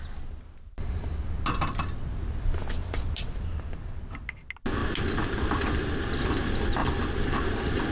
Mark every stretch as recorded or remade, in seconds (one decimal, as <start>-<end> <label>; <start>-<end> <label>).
0.0-7.9 recorded

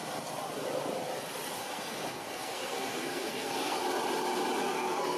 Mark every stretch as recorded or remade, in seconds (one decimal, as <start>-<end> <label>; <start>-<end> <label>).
0.0-1.6 recorded; 1.6-3.8 remade; 3.8-4.6 recorded; 4.6-5.2 remade

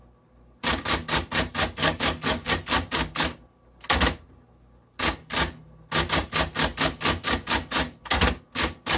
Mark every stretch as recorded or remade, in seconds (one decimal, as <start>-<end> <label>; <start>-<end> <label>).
0.0-1.8 recorded; 1.8-2.5 remade; 2.5-9.0 recorded